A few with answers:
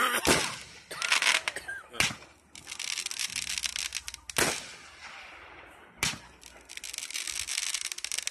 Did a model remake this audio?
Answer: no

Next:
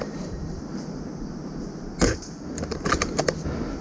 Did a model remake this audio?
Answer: no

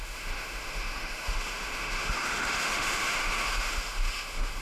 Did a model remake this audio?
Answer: yes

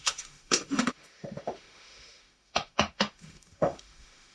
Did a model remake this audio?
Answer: yes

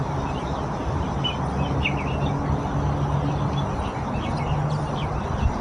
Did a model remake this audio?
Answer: no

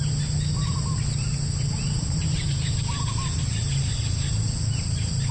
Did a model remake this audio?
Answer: no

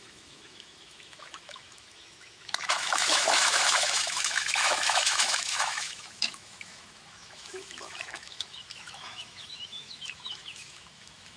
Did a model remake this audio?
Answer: yes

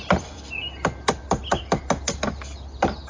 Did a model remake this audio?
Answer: no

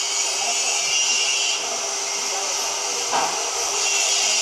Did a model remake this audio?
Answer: no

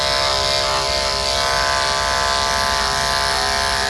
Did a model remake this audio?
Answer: no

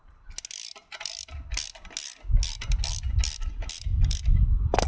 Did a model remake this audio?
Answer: no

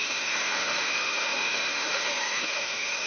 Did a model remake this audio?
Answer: yes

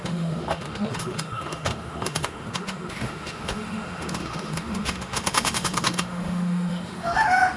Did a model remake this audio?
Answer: yes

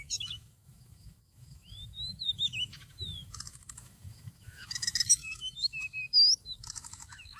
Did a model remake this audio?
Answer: yes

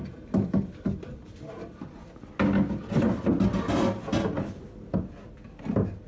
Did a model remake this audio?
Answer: no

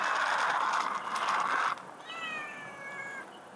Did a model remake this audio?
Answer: no